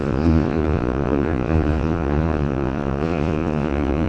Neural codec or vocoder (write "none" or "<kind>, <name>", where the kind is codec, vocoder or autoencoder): vocoder, Vocos